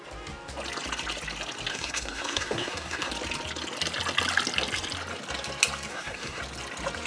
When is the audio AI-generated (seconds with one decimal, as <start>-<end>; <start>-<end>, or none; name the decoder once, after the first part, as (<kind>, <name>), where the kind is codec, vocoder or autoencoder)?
1.7-3.1 (codec, SNAC); 5.9-6.4